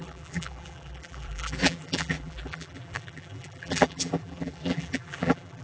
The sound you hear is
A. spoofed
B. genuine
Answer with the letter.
A